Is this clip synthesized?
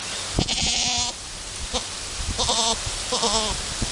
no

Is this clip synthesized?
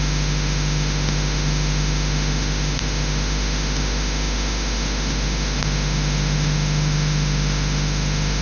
yes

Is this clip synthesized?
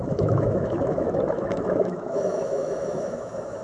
yes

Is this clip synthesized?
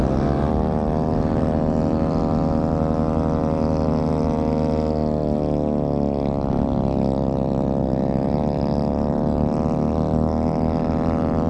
no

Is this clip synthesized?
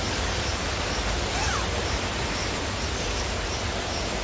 no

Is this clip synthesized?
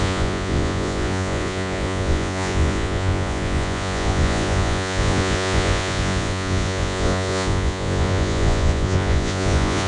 yes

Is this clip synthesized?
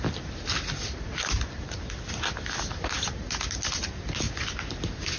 no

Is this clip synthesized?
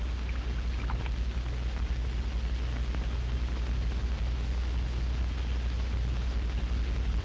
no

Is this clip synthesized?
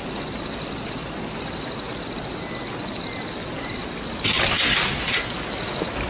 no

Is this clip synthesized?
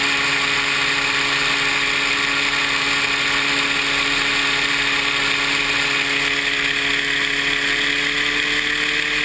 no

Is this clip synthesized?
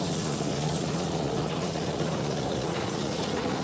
yes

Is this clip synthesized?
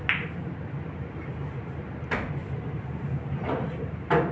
no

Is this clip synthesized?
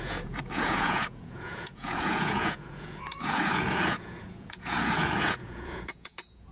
yes